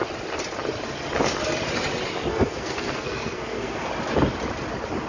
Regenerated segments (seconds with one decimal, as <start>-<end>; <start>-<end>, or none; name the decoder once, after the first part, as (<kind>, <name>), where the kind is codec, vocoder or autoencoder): 2.3-3.9 (codec, SNAC)